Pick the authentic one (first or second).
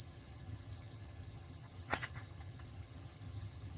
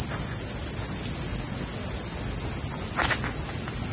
second